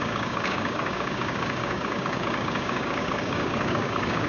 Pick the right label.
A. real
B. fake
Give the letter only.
B